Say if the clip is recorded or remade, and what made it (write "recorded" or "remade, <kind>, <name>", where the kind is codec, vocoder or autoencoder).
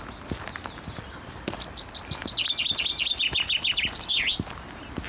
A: recorded